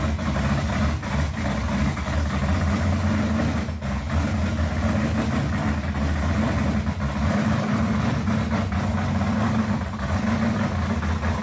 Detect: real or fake real